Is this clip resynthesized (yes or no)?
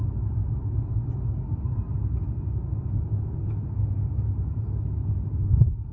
no